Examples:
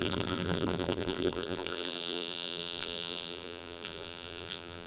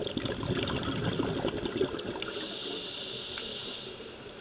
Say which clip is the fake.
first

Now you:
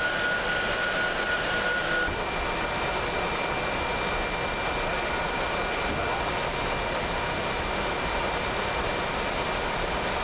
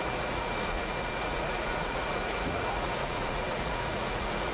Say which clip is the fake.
second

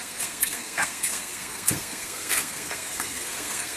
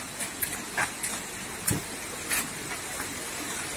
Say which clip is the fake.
first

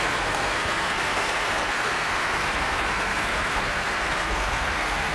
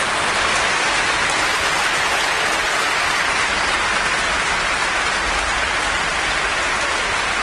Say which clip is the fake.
first